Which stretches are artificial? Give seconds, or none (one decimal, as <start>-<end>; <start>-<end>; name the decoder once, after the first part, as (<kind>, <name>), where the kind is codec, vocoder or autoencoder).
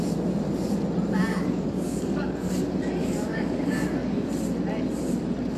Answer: 1.3-2.5 (codec, DAC); 3.0-4.3